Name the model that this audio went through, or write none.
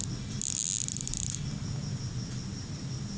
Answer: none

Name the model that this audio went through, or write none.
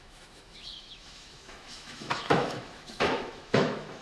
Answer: autoencoder, DAC-VAE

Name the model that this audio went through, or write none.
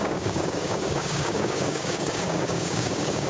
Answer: codec, DAC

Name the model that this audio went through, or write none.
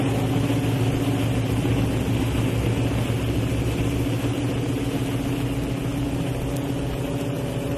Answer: none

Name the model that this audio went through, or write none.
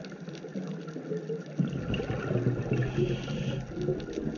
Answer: none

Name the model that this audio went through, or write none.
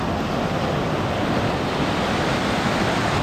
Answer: none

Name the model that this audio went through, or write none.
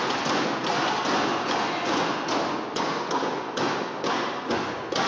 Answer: vocoder, Vocos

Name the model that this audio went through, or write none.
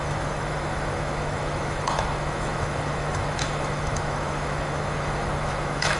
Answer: autoencoder, DAC-VAE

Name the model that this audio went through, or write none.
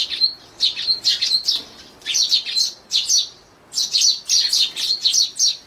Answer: none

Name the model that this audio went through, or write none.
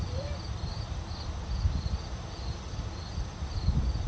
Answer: none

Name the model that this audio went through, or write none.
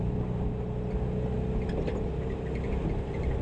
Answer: none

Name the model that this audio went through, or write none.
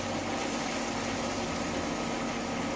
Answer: none